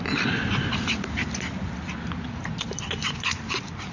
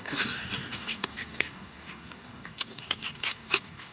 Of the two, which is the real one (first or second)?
first